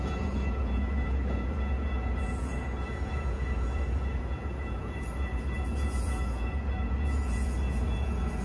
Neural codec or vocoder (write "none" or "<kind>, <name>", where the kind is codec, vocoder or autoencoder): vocoder, Vocos